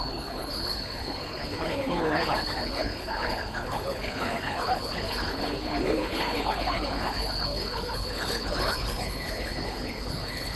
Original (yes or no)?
no